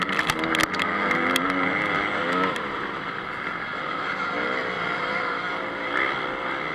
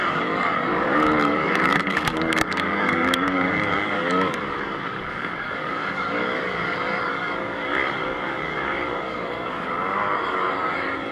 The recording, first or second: first